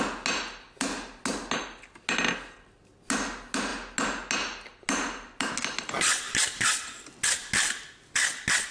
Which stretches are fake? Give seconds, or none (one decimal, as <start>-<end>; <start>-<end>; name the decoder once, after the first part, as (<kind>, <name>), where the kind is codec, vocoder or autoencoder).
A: none